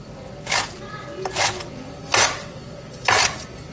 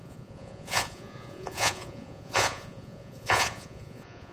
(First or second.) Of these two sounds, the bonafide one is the first